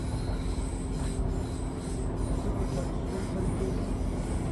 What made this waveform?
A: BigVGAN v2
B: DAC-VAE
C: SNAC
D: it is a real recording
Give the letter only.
D